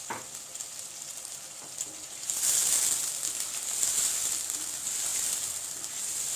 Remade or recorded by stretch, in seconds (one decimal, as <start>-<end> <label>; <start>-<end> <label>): 0.0-6.4 recorded